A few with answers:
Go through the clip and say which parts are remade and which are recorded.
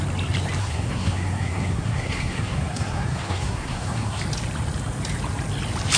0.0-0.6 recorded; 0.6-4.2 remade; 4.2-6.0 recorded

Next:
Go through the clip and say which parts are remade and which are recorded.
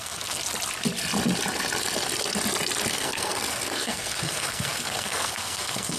0.0-0.4 remade; 0.4-2.9 recorded; 2.9-6.0 remade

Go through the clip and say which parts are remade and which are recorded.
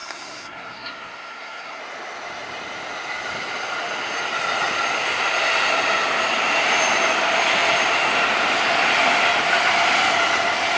0.0-1.8 remade; 1.8-10.8 recorded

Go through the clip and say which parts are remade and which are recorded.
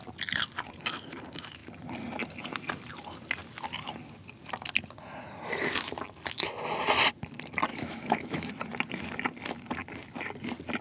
0.0-7.7 recorded; 7.7-8.5 remade; 8.5-10.8 recorded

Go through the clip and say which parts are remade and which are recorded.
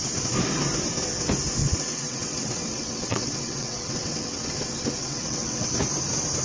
0.0-1.6 recorded; 1.6-4.5 remade; 4.5-5.0 recorded; 5.0-5.7 remade; 5.7-6.4 recorded